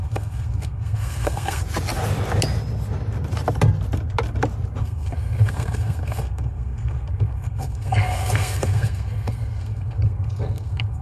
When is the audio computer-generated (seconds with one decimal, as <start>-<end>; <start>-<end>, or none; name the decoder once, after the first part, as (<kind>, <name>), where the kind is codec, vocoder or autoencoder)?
0.0-1.6 (codec, SNAC); 4.8-11.0